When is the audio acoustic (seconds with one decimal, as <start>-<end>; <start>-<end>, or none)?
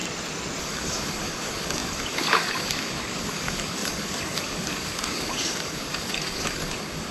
0.0-0.6